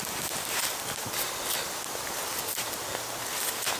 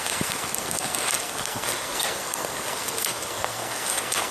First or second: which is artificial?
second